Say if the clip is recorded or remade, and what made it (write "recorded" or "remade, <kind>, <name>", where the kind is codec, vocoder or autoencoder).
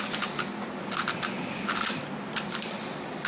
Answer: recorded